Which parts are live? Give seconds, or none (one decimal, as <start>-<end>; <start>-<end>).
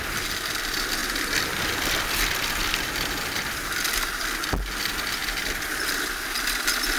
0.0-7.0